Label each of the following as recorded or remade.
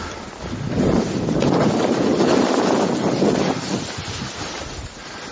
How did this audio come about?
recorded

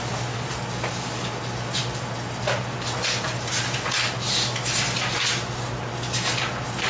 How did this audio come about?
recorded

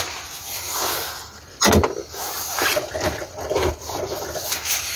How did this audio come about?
recorded